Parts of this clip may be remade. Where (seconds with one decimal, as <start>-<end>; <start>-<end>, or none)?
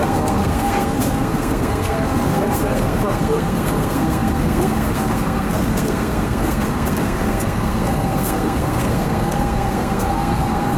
0.0-10.8